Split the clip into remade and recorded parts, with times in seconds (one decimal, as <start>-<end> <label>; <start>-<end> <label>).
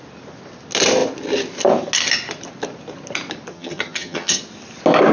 0.0-3.5 recorded; 3.5-4.4 remade; 4.4-5.1 recorded